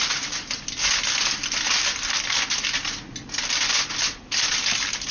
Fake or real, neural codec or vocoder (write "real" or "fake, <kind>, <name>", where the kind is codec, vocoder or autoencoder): real